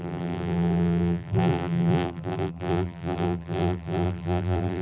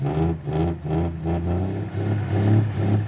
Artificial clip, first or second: first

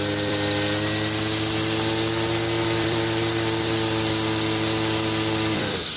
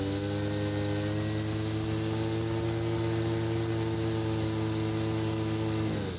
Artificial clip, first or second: first